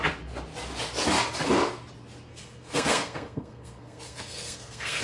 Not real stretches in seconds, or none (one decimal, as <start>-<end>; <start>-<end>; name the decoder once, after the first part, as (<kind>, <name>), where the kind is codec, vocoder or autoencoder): 2.3-5.0 (codec, SNAC)